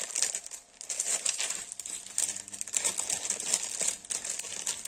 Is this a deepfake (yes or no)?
no